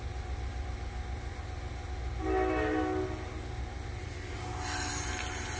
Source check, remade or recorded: recorded